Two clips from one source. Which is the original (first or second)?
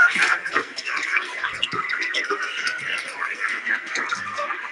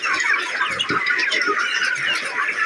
second